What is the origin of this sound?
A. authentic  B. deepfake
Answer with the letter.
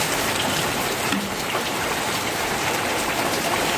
B